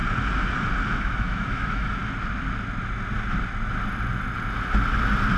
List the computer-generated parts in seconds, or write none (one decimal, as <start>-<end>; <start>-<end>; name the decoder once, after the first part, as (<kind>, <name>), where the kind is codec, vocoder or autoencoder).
0.9-2.0 (autoencoder, DAC-VAE)